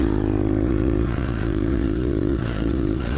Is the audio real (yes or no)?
no